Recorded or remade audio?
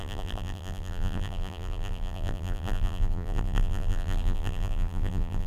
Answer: remade